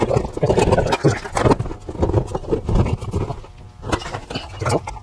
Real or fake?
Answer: real